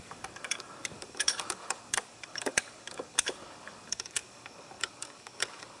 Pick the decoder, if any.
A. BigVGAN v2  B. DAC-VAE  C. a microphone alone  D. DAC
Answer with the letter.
D